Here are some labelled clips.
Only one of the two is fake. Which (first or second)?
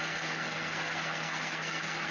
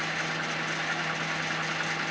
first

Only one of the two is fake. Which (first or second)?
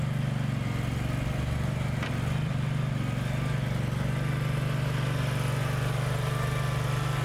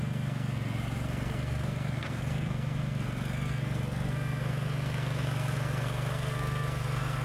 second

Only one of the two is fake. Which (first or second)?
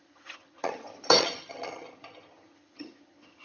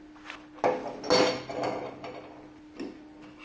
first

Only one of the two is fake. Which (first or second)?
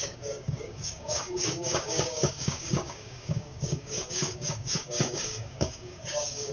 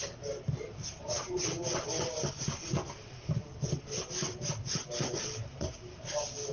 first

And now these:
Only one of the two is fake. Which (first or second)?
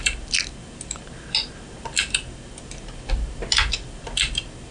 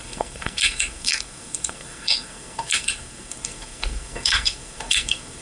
second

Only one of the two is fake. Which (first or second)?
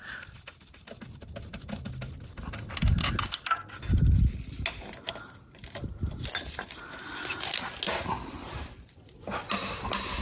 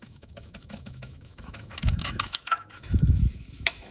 second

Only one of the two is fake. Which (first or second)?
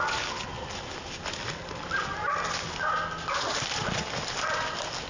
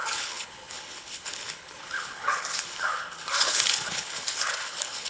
second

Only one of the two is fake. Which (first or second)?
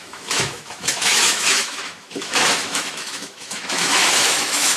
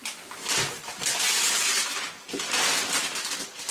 first